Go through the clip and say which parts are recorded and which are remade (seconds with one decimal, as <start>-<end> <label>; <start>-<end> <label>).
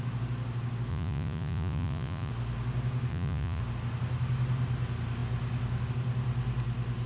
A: 0.0-0.9 recorded; 0.9-2.3 remade; 2.3-3.1 recorded; 3.1-3.6 remade; 3.6-7.1 recorded